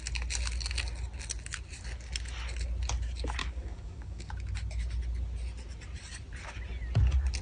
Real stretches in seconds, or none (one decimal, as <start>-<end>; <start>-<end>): 0.0-3.4; 4.3-7.4